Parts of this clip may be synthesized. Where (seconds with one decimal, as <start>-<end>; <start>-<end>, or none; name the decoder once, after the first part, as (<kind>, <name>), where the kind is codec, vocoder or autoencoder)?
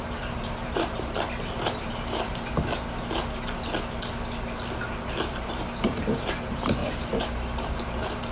0.0-2.3 (vocoder, BigVGAN v2); 5.3-6.8; 7.6-8.3